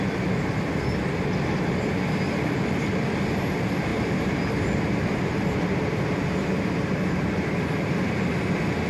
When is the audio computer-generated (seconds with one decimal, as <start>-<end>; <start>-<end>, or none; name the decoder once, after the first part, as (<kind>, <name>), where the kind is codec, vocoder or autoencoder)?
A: 3.9-7.6 (vocoder, BigVGAN v2)